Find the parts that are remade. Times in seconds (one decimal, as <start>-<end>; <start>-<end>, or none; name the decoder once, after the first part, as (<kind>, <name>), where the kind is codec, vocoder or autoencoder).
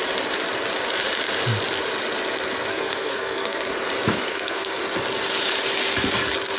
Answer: 2.7-3.7 (codec, SNAC); 4.3-4.8